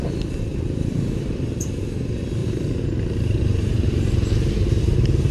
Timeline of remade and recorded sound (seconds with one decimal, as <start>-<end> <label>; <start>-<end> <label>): 0.0-0.5 recorded; 0.5-1.4 remade; 1.4-2.4 recorded; 2.4-5.3 remade